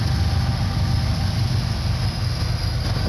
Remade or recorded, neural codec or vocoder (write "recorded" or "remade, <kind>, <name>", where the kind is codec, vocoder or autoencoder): recorded